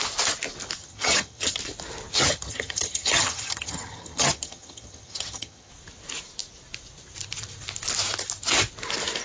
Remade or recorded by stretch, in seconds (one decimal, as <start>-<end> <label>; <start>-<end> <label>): 0.0-0.8 recorded; 0.8-1.6 remade; 1.6-2.1 recorded; 2.1-5.7 remade; 5.7-9.2 recorded